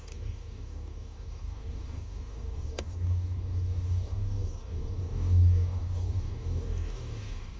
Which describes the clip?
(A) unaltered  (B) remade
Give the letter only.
B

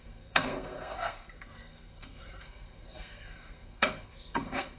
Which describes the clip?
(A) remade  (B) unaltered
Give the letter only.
A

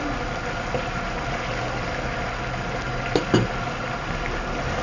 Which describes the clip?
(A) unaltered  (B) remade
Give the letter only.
A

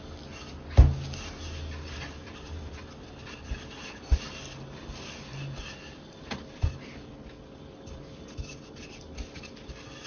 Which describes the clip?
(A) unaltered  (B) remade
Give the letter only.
A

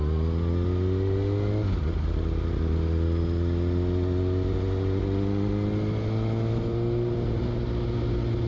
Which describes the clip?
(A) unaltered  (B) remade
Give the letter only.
A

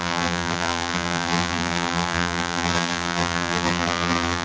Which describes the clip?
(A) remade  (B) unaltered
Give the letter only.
A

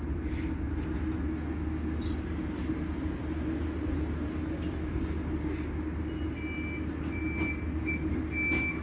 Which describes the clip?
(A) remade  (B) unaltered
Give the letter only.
B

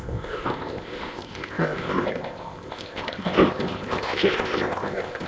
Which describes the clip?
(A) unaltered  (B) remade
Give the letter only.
B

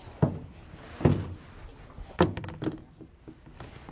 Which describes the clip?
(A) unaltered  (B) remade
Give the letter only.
A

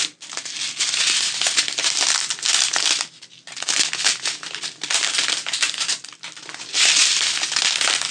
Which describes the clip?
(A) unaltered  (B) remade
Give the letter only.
A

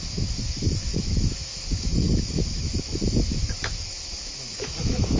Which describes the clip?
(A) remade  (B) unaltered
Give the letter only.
A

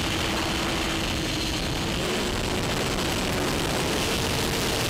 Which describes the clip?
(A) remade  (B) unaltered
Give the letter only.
B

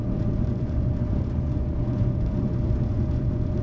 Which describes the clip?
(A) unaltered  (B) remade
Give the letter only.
B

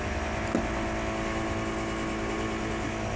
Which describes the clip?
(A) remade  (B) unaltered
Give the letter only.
B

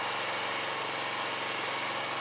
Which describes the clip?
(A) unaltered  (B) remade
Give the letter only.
A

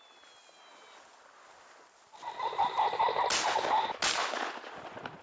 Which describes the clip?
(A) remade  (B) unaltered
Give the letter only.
B